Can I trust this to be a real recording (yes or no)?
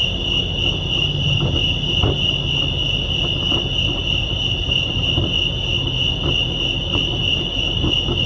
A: yes